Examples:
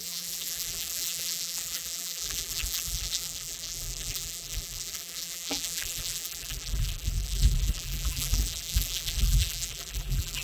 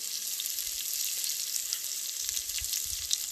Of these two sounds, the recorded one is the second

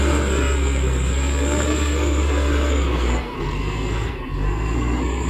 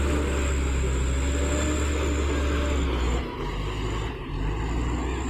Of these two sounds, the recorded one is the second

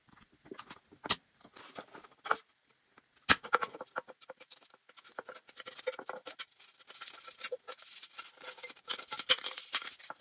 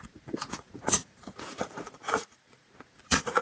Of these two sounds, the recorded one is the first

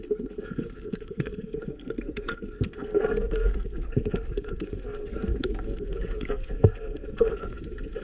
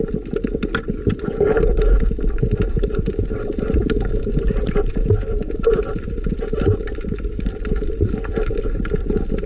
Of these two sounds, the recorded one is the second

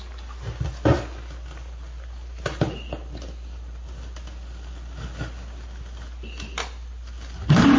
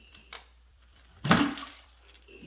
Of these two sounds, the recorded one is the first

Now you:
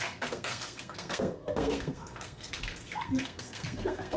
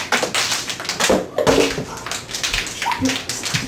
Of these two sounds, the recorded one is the second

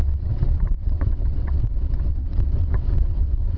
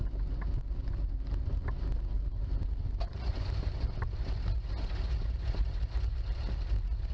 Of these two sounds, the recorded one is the second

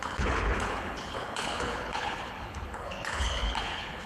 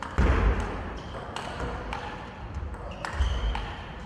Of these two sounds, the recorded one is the second